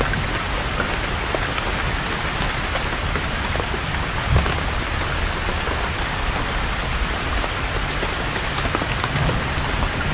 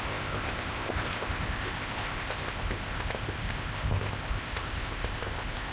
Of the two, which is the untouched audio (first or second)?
first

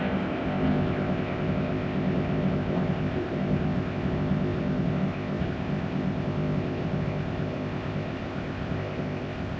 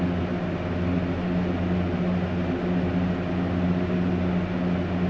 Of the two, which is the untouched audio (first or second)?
second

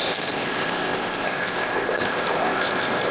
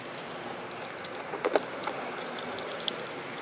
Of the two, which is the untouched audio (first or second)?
second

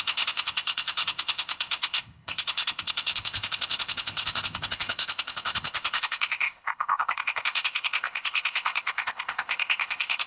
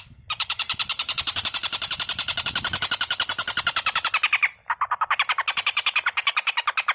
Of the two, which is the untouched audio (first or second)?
second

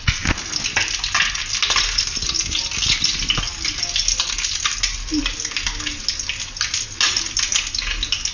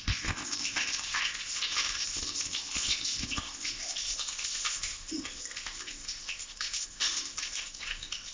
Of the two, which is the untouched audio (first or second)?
first